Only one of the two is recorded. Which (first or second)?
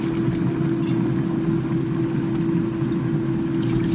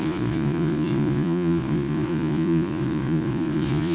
first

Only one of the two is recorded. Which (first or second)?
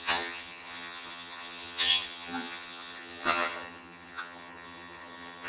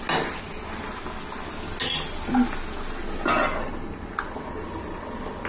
second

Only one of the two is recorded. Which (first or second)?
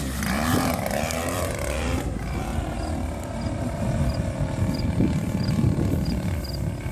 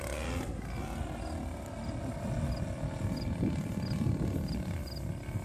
second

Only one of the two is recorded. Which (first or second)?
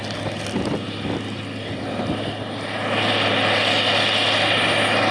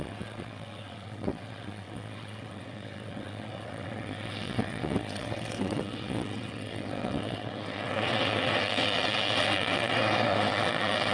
first